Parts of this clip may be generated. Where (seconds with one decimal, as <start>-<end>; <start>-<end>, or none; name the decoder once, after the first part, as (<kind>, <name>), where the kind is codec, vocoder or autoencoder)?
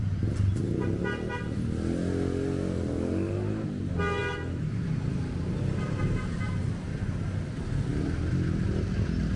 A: none